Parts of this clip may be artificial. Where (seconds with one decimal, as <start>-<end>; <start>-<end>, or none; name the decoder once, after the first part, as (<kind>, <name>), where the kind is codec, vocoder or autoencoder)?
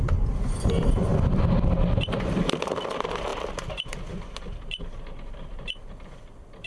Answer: 0.0-6.7 (vocoder, BigVGAN v2)